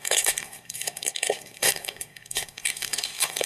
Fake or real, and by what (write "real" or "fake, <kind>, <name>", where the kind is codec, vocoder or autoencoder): fake, codec, SNAC